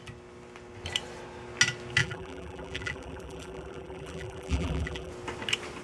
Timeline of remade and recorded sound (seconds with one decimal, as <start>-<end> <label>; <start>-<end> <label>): 0.0-2.0 recorded; 2.0-5.1 remade; 5.1-5.8 recorded